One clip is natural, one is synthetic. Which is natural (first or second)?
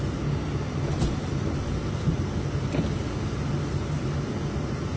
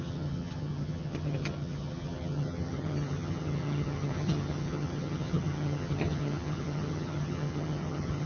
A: first